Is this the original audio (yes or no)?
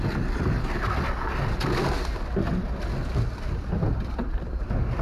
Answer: yes